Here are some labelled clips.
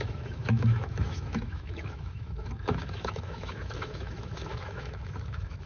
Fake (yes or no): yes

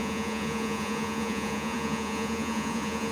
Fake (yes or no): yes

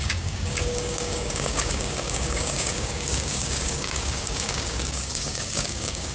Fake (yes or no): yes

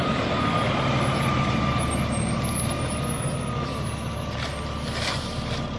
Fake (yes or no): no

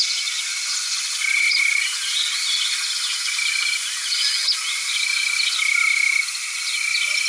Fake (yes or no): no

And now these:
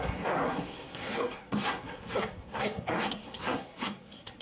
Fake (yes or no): yes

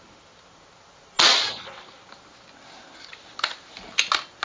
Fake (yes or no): no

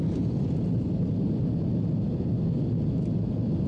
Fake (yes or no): no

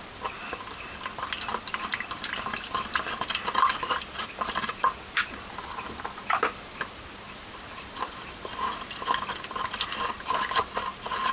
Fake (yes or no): no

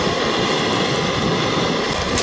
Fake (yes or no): no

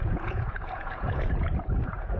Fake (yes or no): yes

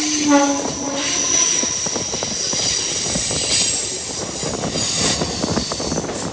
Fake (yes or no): no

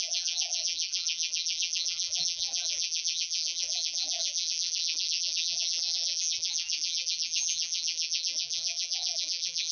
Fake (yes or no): yes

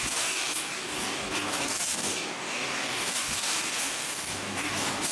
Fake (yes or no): yes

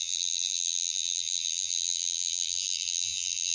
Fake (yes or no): yes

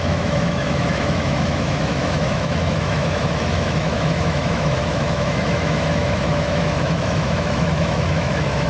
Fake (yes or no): yes